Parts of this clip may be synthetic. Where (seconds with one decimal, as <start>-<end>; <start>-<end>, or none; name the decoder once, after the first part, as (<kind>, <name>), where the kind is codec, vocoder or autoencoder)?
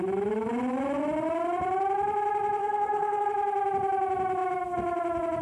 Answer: 2.6-3.3 (codec, SNAC)